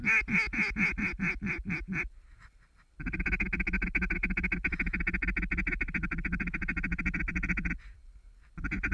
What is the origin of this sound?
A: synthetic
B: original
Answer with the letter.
B